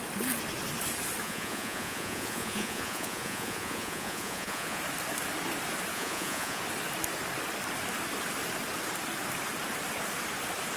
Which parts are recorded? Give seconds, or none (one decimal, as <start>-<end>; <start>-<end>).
0.0-1.2; 4.8-5.9; 6.6-10.8